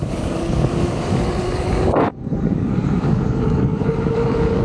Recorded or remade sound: remade